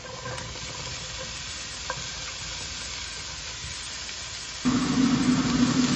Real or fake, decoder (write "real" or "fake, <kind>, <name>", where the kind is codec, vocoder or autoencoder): real